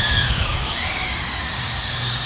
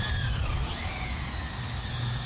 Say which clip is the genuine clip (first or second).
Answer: second